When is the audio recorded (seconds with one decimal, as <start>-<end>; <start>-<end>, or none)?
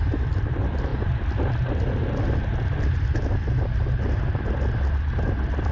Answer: 0.0-5.7